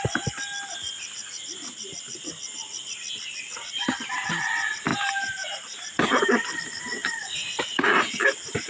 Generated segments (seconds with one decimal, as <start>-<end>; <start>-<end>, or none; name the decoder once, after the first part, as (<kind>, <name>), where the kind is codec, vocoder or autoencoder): 4.9-6.6 (vocoder, BigVGAN v2); 7.0-8.7